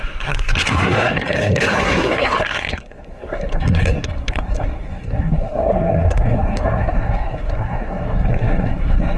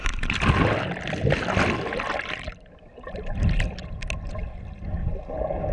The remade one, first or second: first